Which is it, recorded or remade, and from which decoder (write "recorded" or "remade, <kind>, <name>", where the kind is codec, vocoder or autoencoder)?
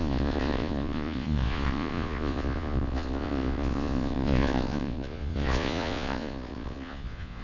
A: remade, vocoder, Vocos